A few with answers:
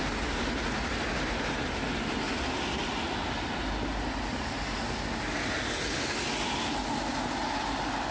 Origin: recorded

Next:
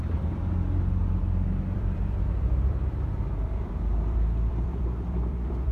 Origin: remade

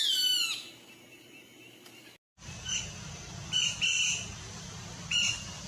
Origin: recorded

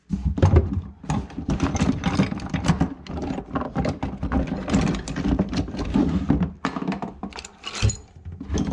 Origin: recorded